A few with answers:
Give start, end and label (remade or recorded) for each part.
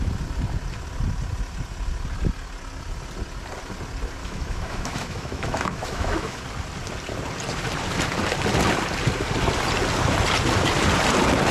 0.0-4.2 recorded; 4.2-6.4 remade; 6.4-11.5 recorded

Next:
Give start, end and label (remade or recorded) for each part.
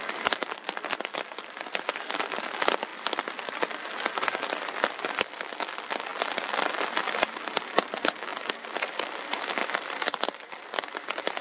0.0-11.4 recorded